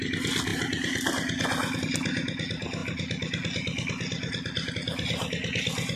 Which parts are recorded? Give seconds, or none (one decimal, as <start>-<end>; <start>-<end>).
0.0-6.0